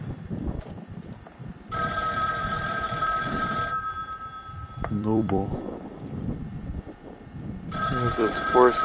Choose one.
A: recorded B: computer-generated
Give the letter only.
B